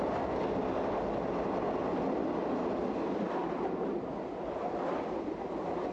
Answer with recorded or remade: recorded